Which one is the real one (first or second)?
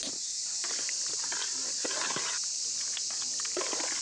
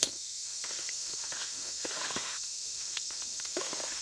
first